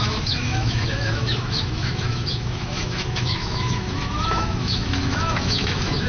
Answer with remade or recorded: remade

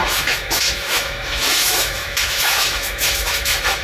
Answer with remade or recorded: remade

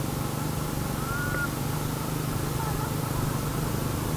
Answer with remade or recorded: recorded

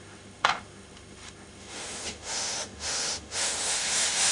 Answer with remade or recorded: remade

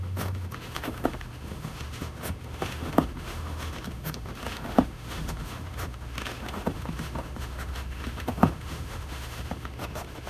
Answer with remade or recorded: remade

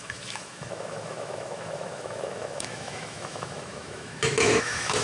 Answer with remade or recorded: remade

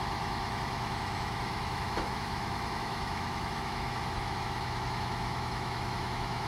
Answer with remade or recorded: remade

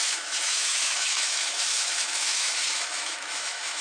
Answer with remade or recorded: remade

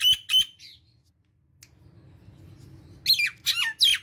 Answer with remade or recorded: recorded